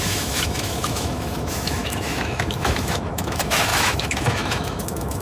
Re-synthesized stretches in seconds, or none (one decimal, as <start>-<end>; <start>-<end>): 0.0-5.2